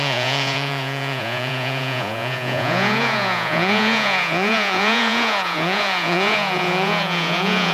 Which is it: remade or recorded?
remade